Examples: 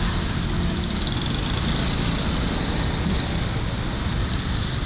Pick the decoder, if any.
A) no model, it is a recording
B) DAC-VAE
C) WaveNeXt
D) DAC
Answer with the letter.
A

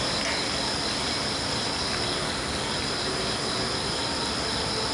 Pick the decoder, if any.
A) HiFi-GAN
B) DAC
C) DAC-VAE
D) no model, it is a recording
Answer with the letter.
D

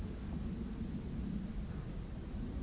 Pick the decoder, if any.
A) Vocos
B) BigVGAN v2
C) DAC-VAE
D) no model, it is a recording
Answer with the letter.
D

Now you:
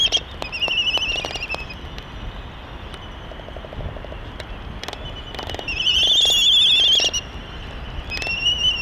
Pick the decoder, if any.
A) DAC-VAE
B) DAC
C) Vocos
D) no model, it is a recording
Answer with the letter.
D